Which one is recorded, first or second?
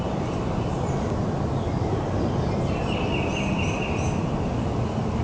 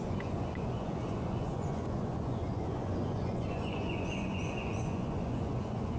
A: first